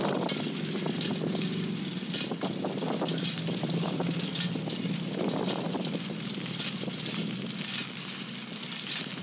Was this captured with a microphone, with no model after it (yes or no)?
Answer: yes